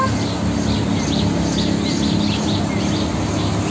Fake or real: real